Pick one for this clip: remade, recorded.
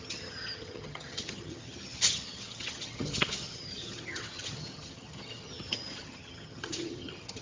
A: remade